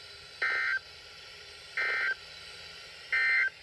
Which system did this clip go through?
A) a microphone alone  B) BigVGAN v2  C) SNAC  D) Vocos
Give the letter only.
A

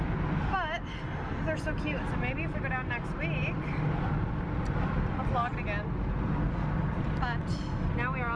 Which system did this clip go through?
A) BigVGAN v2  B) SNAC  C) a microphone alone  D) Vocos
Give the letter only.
C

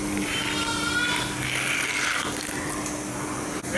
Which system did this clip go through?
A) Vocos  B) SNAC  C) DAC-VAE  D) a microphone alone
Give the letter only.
D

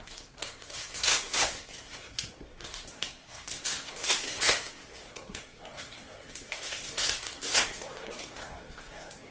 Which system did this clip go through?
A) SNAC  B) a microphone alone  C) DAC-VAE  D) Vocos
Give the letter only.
A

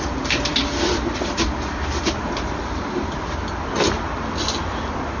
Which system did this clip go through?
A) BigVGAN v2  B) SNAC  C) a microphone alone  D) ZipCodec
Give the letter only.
C